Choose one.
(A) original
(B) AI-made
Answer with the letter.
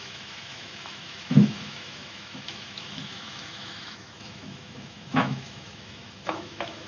B